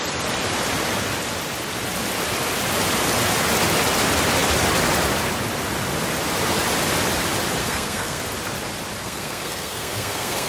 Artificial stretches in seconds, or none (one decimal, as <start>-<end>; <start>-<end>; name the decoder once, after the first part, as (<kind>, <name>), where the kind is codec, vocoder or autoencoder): 7.6-8.2 (codec, SNAC); 9.0-10.5